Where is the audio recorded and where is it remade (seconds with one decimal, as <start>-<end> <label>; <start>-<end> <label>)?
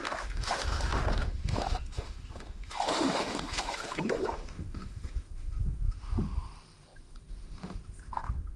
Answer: 0.0-8.6 remade